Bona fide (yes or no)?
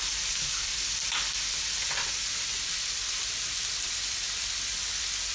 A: yes